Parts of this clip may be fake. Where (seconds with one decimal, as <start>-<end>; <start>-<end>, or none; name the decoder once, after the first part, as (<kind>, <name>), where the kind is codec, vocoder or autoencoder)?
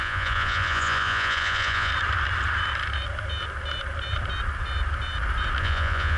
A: 0.0-1.9 (vocoder, Vocos); 5.6-6.2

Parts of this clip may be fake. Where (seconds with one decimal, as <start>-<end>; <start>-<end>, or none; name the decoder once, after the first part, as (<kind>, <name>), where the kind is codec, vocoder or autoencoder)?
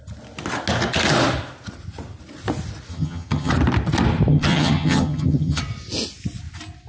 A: 2.9-3.5 (vocoder, HiFi-GAN); 4.3-5.6